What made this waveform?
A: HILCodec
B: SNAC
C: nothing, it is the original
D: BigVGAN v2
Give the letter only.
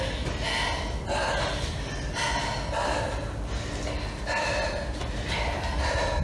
C